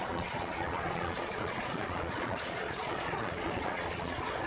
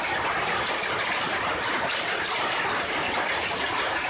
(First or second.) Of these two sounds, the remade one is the first